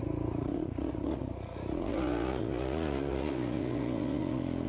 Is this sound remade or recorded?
remade